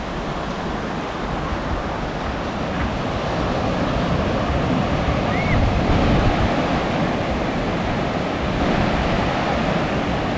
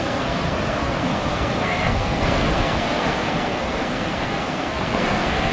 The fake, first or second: second